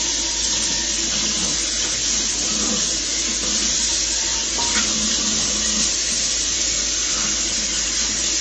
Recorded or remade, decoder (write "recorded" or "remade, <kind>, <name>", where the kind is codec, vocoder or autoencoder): recorded